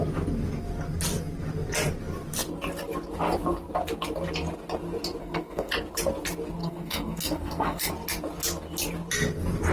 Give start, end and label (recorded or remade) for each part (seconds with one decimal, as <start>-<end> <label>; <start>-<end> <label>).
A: 0.0-5.2 recorded; 5.2-5.7 remade; 5.7-6.6 recorded; 6.6-7.9 remade; 7.9-9.7 recorded